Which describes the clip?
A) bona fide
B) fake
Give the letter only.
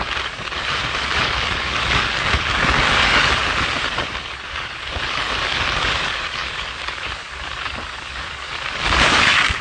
B